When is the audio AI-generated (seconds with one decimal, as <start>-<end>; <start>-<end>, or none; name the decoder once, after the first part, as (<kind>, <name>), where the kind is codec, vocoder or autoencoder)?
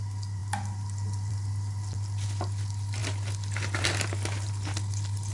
none